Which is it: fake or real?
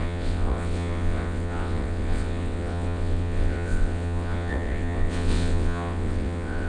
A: fake